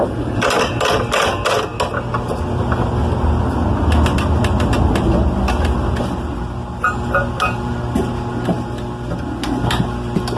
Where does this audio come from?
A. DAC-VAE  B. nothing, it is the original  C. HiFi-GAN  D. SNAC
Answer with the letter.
B